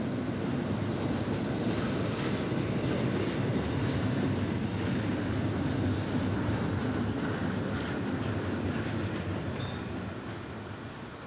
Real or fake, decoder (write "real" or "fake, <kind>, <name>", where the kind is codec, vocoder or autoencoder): real